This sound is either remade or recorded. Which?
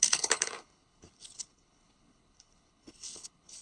remade